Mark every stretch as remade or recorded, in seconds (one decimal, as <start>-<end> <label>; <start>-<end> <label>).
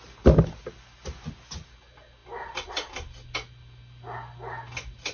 0.0-5.1 recorded